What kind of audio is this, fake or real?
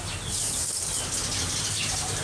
real